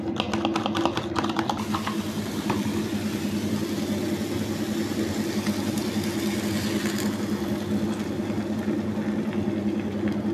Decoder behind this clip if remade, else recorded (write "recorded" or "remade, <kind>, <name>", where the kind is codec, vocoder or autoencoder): recorded